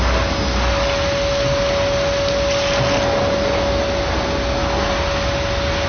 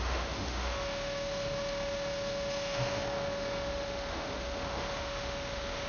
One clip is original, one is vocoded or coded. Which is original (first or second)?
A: first